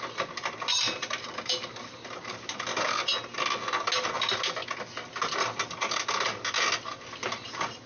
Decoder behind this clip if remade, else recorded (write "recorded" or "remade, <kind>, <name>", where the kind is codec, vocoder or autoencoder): recorded